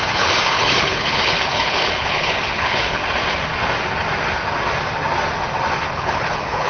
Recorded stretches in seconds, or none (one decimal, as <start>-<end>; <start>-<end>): 3.0-5.8